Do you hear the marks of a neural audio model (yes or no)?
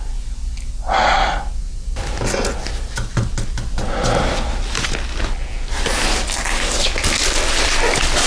no